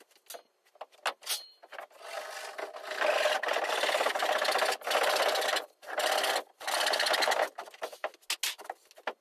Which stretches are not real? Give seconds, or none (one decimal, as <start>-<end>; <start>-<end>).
none